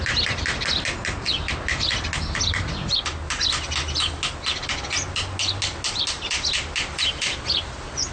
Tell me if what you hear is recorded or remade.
recorded